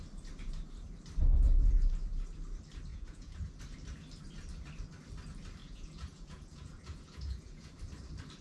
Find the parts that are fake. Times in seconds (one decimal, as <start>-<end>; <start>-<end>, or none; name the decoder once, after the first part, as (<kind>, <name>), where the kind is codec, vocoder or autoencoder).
2.9-3.6 (vocoder, Vocos); 5.6-7.7